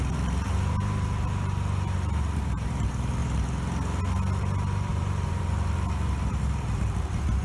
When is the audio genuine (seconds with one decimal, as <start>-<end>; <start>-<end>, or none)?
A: 3.2-4.4